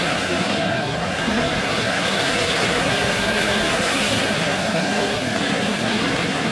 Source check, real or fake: fake